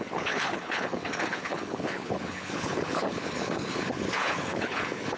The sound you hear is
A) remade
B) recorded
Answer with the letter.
A